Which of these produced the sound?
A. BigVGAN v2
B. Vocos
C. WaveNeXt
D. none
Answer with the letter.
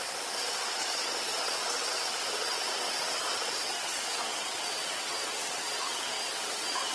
C